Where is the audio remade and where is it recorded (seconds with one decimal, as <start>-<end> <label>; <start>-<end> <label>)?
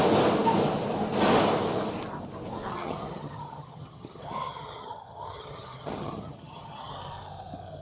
0.0-2.7 recorded; 2.7-6.9 remade; 6.9-7.8 recorded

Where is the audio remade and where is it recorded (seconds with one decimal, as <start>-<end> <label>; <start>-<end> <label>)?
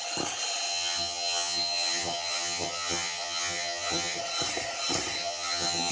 0.0-0.7 recorded; 0.7-4.2 remade; 4.2-5.2 recorded; 5.2-5.9 remade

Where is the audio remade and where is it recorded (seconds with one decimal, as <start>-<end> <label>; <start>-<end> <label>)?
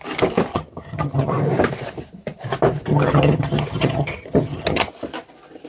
0.0-0.5 recorded; 0.5-1.3 remade; 1.3-2.9 recorded; 2.9-4.9 remade; 4.9-5.7 recorded